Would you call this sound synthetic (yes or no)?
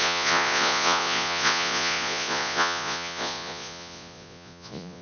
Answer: yes